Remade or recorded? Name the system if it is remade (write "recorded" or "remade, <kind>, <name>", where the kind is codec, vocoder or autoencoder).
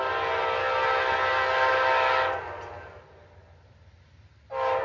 recorded